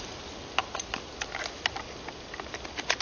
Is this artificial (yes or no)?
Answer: no